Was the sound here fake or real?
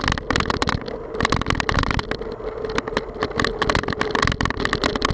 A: real